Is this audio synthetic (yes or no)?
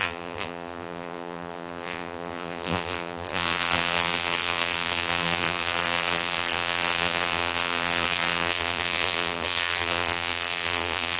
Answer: yes